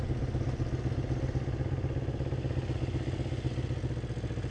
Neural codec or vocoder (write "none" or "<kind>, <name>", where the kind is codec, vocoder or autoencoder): none